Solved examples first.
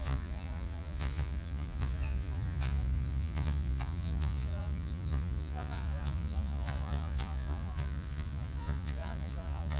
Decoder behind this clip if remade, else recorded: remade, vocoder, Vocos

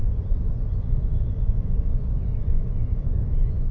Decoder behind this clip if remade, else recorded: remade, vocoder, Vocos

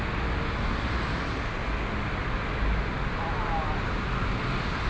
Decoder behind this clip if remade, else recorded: recorded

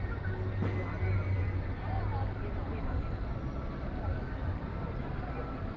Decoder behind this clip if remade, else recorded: recorded